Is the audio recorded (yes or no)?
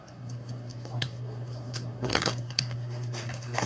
no